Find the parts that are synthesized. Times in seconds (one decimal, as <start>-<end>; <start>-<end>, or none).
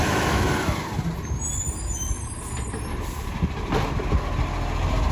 0.0-0.5